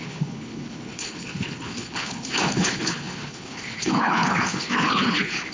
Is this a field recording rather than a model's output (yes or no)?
no